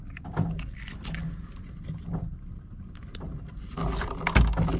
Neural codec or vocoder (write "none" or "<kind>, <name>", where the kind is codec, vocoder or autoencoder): none